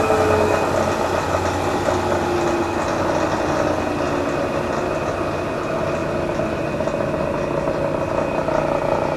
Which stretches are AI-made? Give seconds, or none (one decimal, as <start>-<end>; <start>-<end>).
none